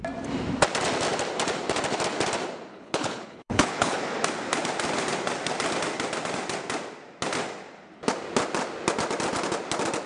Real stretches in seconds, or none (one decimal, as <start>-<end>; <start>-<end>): 0.0-2.7; 4.0-10.1